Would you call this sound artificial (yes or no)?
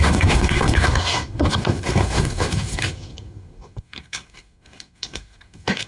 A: yes